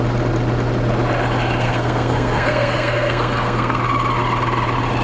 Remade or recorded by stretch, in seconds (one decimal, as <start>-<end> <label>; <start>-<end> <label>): 0.0-1.6 recorded; 1.6-3.8 remade; 3.8-5.0 recorded